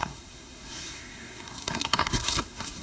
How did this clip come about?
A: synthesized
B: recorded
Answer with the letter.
A